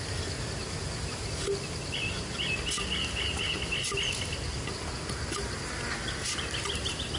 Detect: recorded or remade recorded